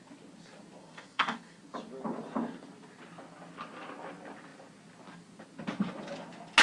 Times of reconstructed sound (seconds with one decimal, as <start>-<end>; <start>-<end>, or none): 0.8-1.6